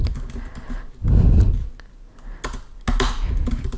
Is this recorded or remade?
recorded